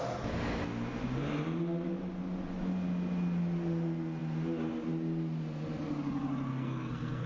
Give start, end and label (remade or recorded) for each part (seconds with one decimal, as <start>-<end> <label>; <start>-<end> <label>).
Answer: 0.0-6.5 recorded; 6.5-7.3 remade